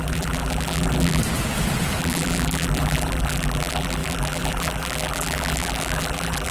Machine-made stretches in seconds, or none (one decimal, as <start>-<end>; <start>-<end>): 0.0-1.2; 2.0-6.5